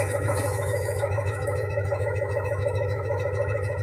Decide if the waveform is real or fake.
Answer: fake